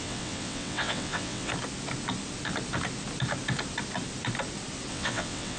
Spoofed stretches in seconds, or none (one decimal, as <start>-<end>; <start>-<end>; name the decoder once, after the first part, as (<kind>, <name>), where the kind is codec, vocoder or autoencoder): 0.0-1.5 (vocoder, WaveNeXt); 4.9-5.6